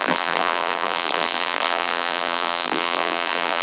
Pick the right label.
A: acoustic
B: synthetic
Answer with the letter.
B